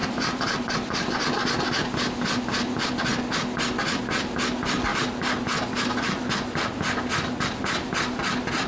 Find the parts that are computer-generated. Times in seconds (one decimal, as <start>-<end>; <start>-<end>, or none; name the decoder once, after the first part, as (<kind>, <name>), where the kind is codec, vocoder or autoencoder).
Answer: 0.0-0.7 (vocoder, BigVGAN v2); 4.9-5.4